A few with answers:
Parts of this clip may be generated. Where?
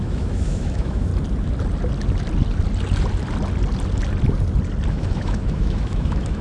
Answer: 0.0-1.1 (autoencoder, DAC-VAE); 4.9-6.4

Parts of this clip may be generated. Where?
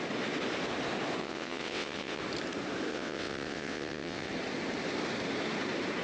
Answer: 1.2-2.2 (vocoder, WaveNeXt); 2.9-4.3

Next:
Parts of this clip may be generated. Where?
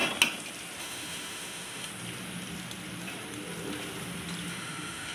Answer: 0.8-1.9 (autoencoder, DAC-VAE); 4.5-5.1